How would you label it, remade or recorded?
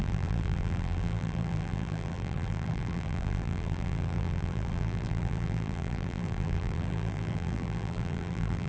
remade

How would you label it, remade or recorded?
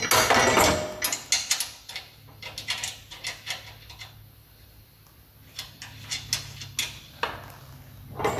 recorded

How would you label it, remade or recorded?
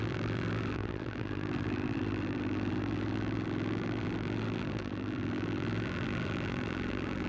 remade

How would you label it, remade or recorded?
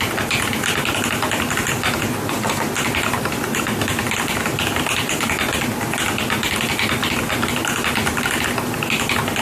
recorded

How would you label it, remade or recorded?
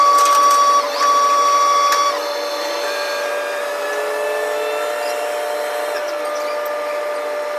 recorded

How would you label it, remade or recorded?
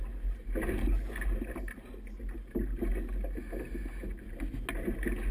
recorded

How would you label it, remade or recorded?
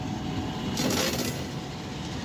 recorded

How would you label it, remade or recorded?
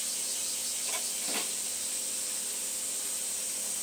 recorded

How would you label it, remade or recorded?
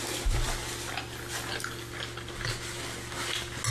recorded